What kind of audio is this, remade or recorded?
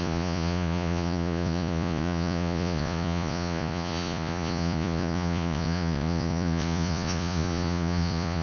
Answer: remade